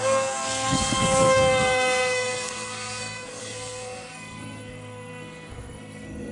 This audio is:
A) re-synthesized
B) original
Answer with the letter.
A